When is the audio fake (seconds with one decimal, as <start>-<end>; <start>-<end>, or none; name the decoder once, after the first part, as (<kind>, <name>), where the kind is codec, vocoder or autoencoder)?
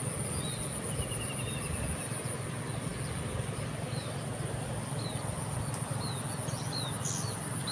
none